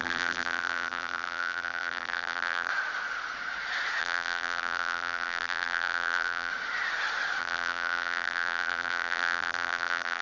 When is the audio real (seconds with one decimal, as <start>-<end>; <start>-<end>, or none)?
2.7-4.0; 6.5-7.4